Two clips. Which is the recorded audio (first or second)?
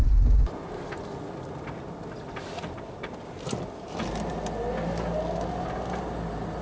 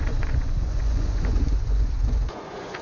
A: first